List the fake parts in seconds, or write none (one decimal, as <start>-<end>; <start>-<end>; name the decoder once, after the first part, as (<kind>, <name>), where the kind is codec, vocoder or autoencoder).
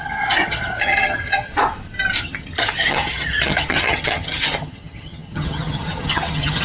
0.0-1.5 (vocoder, HiFi-GAN); 2.2-6.6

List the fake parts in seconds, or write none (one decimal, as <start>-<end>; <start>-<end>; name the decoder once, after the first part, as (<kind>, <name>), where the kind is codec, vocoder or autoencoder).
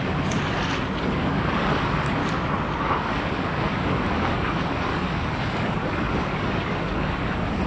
0.0-0.4 (codec, DAC); 1.0-2.2; 2.8-7.7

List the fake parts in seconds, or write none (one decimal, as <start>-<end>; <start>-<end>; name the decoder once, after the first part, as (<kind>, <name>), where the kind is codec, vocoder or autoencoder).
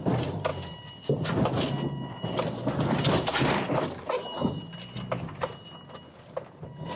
none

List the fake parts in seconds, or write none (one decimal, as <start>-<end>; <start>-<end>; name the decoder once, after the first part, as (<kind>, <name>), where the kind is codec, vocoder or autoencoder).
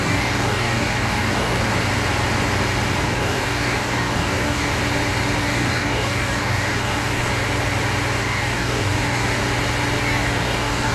0.0-1.7 (codec, DAC); 3.0-4.7; 5.4-7.3; 8.2-9.4; 10.0-10.9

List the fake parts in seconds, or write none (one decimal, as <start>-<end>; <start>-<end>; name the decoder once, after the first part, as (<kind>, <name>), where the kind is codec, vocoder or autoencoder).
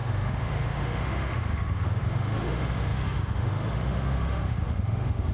0.0-5.3 (autoencoder, DAC-VAE)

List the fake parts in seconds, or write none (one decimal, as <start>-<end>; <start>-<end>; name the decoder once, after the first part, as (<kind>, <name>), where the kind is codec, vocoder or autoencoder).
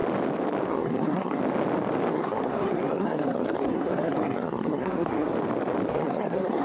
0.7-1.4 (codec, SNAC); 2.1-5.3; 5.9-6.6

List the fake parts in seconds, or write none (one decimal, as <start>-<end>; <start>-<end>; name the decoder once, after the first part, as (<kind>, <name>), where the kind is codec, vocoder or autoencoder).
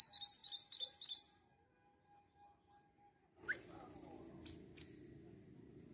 none